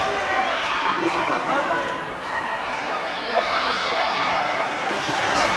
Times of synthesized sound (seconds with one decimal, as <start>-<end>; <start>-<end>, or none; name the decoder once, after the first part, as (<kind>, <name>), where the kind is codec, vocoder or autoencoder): 0.5-1.5 (codec, SNAC); 2.1-5.6